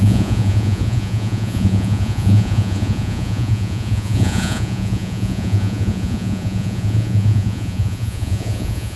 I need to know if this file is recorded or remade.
remade